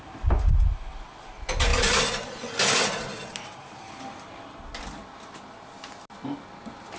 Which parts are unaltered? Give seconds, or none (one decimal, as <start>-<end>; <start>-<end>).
0.0-7.0